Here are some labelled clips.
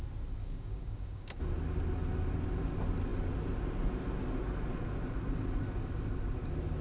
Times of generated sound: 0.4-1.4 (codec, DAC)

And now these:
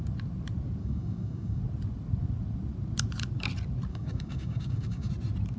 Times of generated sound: 0.8-1.6 (codec, DAC); 3.9-5.1

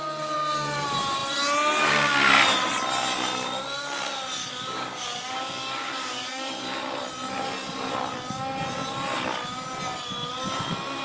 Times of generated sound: 4.4-6.5 (codec, DAC)

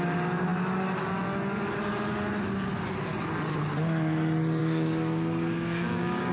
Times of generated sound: 4.6-6.3 (codec, DAC)

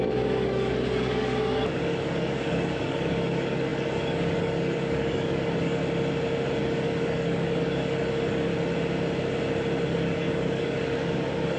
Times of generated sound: 0.0-5.8 (codec, DAC); 6.6-8.5; 9.9-11.6